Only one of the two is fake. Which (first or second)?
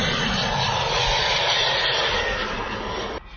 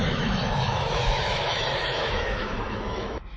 second